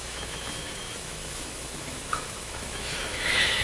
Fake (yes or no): yes